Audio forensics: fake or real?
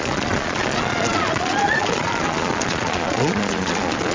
fake